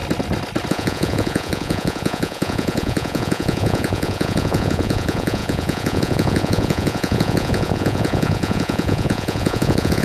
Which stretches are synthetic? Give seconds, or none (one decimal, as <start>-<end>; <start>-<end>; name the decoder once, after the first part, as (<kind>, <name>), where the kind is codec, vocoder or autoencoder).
0.7-10.0 (vocoder, Vocos)